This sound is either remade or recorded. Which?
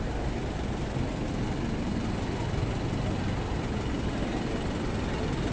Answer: recorded